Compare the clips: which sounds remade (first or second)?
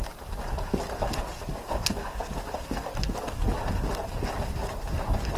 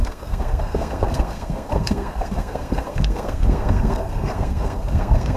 second